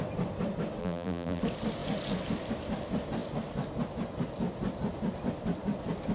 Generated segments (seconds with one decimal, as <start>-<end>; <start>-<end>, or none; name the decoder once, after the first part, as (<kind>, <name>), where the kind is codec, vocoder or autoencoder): 0.8-1.4 (vocoder, BigVGAN v2)